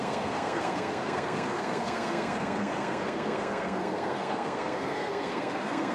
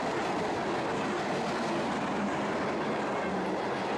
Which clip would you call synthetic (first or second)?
first